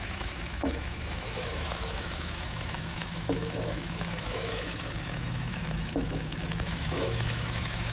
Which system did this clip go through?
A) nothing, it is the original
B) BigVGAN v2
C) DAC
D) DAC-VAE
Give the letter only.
D